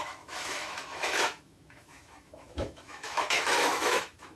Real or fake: fake